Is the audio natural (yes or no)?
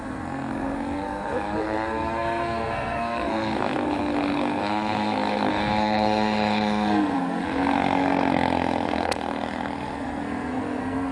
no